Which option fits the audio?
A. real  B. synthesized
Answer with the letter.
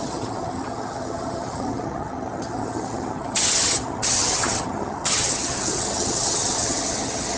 B